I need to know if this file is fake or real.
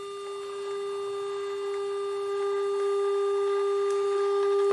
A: real